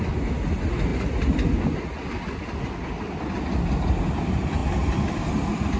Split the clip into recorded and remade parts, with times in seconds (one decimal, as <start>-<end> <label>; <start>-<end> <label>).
0.0-5.8 recorded